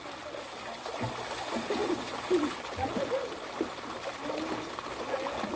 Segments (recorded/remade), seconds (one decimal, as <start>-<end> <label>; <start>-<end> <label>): 0.0-5.6 recorded